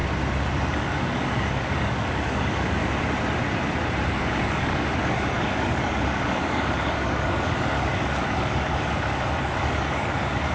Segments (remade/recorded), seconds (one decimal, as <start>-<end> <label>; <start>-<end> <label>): 0.0-0.6 recorded; 0.6-2.8 remade; 2.8-4.1 recorded; 4.1-10.5 remade